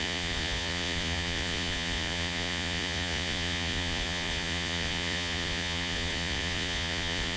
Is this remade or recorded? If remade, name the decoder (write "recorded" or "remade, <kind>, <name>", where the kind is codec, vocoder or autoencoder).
remade, vocoder, Vocos